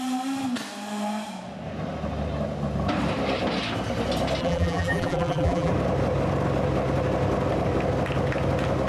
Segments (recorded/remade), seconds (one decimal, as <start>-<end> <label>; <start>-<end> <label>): 0.0-4.4 recorded; 4.4-5.7 remade; 5.7-8.9 recorded